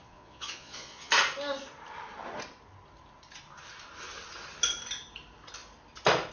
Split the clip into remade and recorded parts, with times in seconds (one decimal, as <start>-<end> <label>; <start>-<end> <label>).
0.0-1.1 remade; 1.1-6.3 recorded

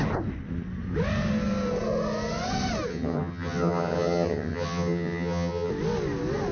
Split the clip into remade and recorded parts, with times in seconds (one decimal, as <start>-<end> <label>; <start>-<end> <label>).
0.0-2.9 recorded; 2.9-5.7 remade; 5.7-6.5 recorded

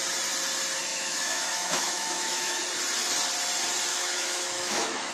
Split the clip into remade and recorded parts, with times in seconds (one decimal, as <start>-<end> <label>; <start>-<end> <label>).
0.0-0.9 recorded; 0.9-2.6 remade; 2.6-3.9 recorded; 3.9-5.1 remade